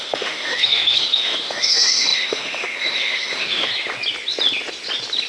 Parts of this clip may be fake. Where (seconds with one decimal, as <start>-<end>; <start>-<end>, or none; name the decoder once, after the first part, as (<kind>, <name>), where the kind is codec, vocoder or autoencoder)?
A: 0.0-3.7 (autoencoder, DAC-VAE)